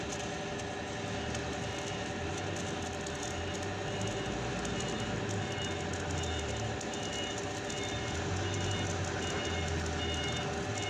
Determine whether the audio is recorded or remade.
recorded